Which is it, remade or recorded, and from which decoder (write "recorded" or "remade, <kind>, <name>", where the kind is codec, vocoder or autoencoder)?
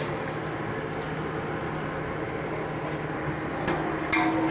recorded